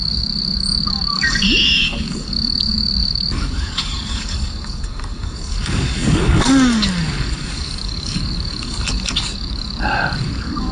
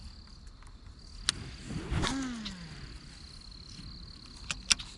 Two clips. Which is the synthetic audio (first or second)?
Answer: first